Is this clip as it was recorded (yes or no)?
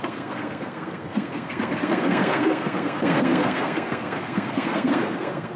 no